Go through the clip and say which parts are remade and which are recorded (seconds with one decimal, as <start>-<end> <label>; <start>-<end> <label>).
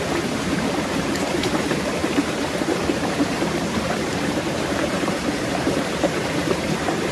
0.0-7.1 remade